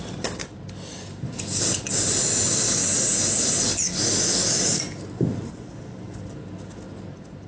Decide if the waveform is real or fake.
real